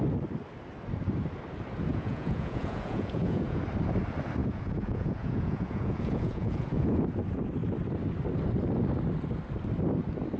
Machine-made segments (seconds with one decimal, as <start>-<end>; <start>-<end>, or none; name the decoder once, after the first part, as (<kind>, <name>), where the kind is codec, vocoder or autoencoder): 1.9-3.6 (vocoder, Vocos); 4.4-7.0